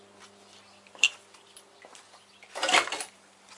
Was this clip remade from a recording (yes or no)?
yes